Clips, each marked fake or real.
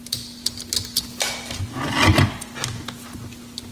real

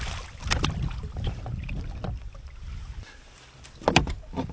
real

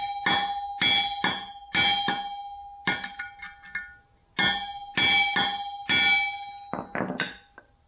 real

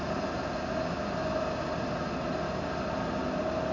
real